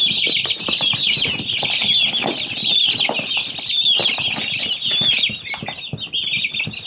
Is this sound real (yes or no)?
yes